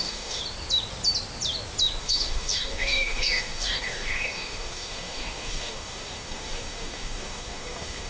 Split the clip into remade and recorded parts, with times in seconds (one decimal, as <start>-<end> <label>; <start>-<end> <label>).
0.0-0.4 remade; 0.4-2.0 recorded; 2.0-8.1 remade